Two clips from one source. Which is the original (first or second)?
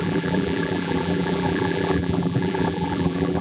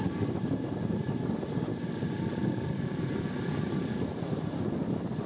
second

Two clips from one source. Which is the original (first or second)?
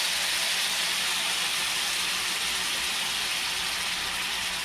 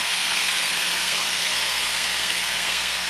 first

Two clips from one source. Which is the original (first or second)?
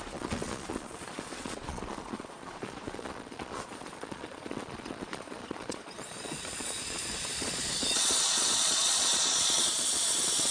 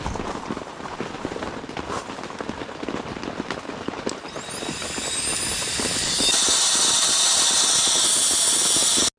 second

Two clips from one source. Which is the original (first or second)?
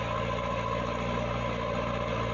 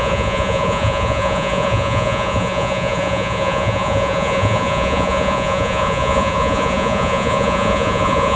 first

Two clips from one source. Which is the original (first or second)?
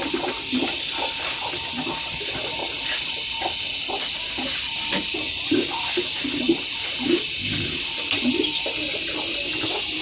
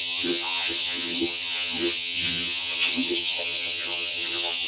first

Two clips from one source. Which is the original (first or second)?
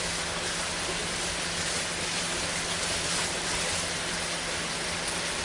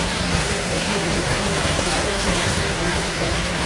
first